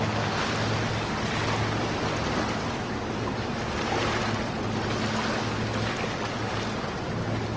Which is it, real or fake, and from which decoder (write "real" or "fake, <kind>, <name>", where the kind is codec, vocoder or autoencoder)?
real